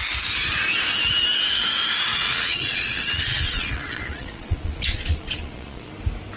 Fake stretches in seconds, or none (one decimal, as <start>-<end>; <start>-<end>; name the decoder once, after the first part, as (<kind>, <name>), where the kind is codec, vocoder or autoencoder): 2.1-5.9 (vocoder, Vocos)